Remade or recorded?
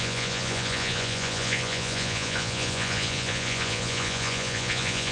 remade